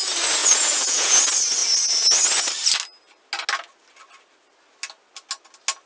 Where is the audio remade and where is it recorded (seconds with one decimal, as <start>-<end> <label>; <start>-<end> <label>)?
0.0-0.4 recorded; 0.4-1.2 remade; 1.2-5.9 recorded